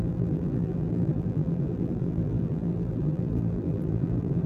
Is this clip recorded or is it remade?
remade